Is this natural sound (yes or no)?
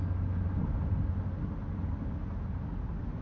yes